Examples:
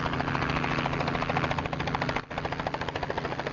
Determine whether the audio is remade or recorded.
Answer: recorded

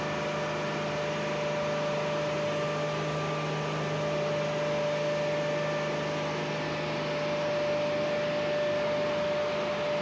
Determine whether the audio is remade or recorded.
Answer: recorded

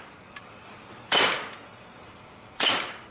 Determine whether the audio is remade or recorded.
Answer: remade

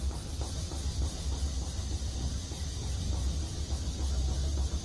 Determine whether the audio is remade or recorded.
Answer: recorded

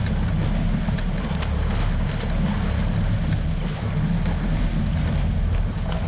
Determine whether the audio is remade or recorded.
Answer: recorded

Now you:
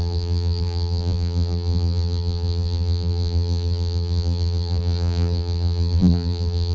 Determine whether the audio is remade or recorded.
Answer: remade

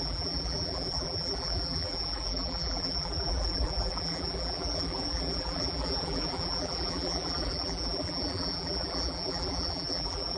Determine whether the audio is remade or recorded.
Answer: remade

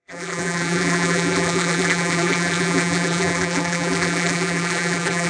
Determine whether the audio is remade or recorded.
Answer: remade